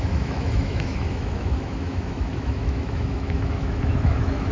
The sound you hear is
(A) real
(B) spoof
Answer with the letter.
B